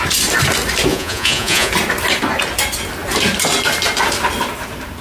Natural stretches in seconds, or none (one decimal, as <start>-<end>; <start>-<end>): 0.0-0.9; 1.7-5.0